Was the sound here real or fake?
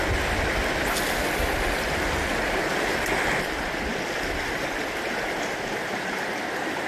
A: real